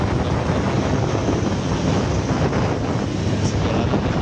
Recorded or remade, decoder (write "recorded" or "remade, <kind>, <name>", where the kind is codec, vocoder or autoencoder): recorded